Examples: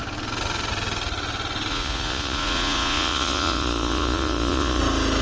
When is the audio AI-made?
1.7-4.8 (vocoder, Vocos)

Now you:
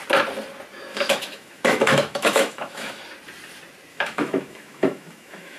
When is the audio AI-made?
0.9-3.0 (autoencoder, DAC-VAE); 3.9-5.6